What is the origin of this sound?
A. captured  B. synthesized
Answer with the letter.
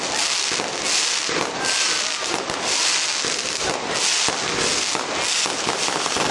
A